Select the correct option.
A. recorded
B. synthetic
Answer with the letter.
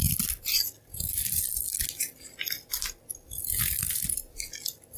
A